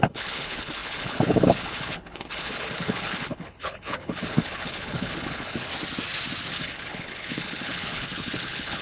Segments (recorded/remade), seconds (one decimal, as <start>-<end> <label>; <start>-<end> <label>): 0.0-5.7 remade; 5.7-6.5 recorded; 6.5-8.8 remade